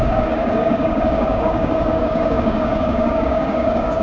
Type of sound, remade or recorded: remade